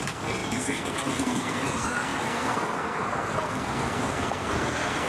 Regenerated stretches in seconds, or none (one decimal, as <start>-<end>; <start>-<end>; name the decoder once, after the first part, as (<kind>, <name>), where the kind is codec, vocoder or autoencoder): 0.0-5.1 (codec, SNAC)